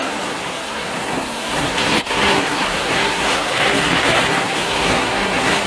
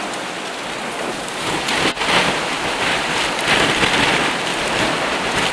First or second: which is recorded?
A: second